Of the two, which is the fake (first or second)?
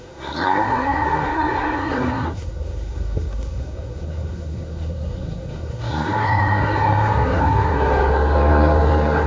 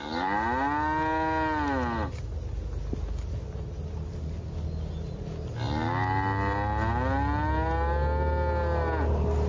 first